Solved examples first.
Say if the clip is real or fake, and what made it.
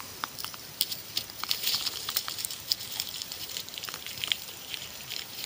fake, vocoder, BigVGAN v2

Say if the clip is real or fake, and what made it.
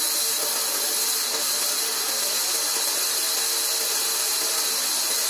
real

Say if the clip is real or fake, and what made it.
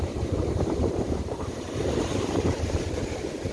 fake, vocoder, BigVGAN v2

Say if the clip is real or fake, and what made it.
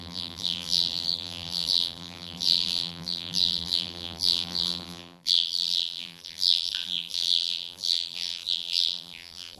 fake, vocoder, BigVGAN v2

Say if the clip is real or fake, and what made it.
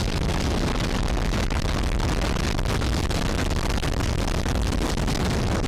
real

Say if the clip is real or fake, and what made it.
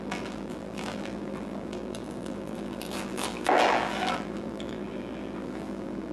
fake, vocoder, BigVGAN v2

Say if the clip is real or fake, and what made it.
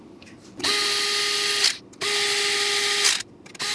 real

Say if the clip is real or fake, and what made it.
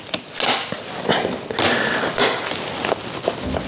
real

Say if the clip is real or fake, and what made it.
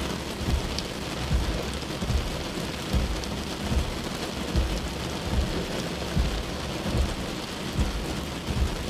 real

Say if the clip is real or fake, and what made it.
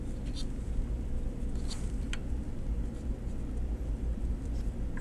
fake, vocoder, BigVGAN v2